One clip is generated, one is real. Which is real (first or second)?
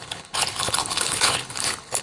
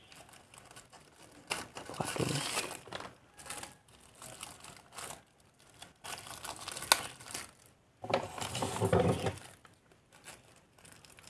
second